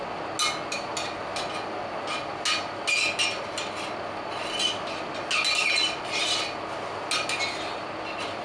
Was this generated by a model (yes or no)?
no